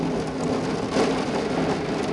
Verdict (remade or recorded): recorded